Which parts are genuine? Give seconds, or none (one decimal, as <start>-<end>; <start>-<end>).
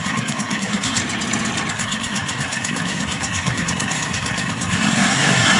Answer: 1.0-1.7